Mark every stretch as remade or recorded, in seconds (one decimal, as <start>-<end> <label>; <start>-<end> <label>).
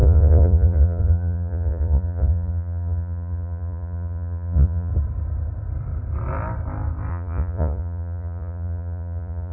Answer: 0.0-4.9 remade; 4.9-7.1 recorded; 7.1-9.5 remade